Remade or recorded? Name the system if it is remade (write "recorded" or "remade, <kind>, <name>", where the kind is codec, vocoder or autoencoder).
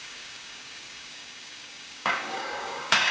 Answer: remade, codec, DAC